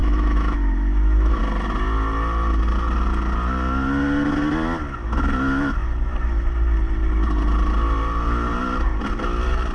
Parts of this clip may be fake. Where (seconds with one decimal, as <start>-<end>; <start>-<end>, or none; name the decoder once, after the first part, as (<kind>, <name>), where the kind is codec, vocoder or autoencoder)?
0.0-1.4 (autoencoder, DAC-VAE)